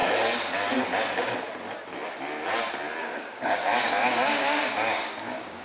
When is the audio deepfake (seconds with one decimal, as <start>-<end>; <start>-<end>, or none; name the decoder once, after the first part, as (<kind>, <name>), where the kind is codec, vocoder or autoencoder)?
3.0-5.6 (codec, DAC)